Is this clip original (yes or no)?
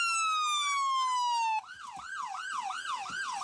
yes